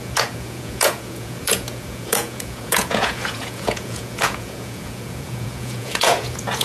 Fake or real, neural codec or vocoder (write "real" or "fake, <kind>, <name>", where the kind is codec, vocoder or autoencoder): fake, vocoder, Vocos